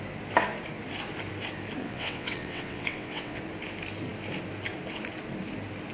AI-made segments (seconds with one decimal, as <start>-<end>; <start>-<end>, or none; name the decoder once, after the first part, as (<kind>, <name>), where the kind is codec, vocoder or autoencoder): 1.8-3.4 (vocoder, WaveNeXt)